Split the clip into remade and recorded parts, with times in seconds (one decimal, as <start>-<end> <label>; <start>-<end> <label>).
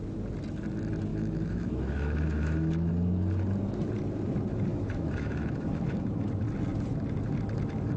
0.0-1.1 recorded; 1.1-2.9 remade; 2.9-4.7 recorded; 4.7-6.3 remade; 6.3-8.0 recorded